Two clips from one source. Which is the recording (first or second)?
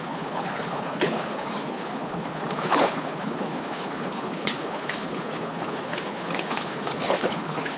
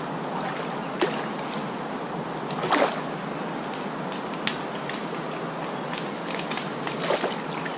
second